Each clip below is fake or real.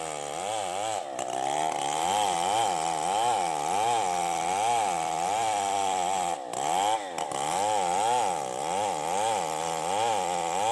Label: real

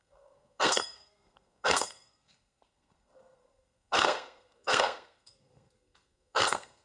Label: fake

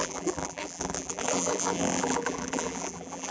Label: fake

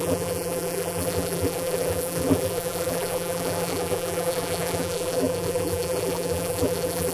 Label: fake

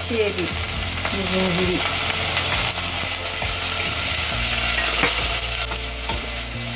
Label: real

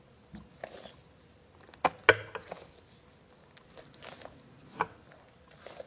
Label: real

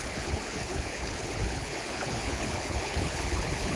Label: fake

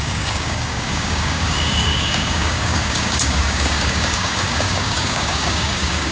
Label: fake